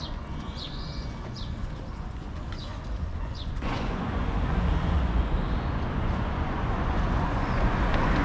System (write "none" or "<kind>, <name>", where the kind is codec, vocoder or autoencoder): vocoder, Vocos